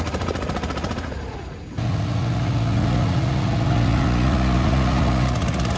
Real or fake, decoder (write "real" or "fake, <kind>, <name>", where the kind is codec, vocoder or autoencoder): fake, vocoder, Vocos